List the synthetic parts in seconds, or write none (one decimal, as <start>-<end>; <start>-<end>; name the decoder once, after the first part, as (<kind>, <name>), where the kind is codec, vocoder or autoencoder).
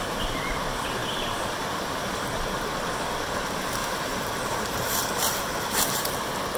3.8-6.1 (vocoder, BigVGAN v2)